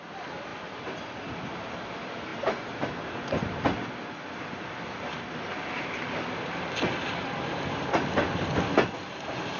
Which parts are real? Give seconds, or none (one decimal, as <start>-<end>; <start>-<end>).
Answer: 0.0-9.6